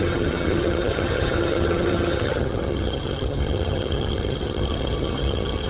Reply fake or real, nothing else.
fake